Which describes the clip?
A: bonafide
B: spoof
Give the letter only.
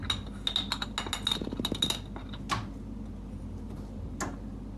A